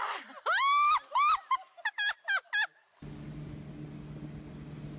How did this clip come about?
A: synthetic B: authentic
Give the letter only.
B